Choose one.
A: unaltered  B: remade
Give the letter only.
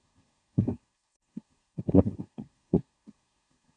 B